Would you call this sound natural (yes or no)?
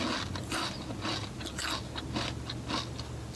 yes